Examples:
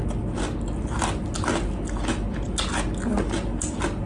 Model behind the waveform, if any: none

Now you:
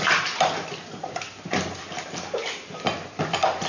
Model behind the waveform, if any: none